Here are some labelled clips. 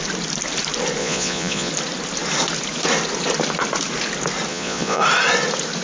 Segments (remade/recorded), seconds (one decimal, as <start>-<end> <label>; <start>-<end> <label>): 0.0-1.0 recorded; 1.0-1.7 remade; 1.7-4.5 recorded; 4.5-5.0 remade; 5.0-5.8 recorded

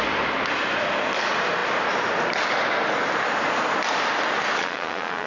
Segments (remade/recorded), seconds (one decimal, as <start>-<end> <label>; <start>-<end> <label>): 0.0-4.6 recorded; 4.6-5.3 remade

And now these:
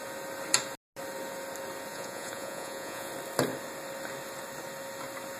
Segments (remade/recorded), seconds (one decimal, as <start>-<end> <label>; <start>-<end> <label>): 0.0-1.9 recorded; 1.9-3.1 remade; 3.1-5.4 recorded

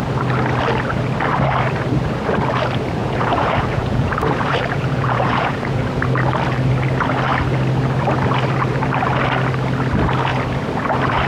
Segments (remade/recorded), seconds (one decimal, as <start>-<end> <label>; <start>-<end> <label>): 0.0-3.0 recorded; 3.0-5.8 remade; 5.8-11.3 recorded

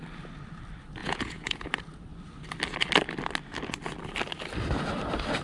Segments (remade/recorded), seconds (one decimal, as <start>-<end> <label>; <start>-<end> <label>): 0.0-1.0 recorded; 1.0-1.7 remade; 1.7-5.4 recorded

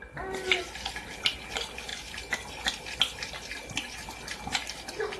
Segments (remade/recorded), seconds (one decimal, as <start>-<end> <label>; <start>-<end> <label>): 0.0-5.2 recorded

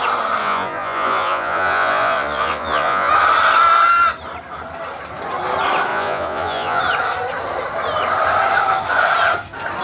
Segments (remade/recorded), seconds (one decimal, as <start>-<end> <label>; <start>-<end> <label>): 0.0-0.4 recorded; 0.4-3.1 remade; 3.1-5.9 recorded; 5.9-6.8 remade; 6.8-9.8 recorded